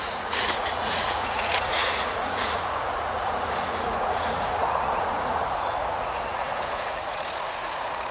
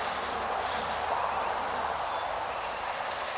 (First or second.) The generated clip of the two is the first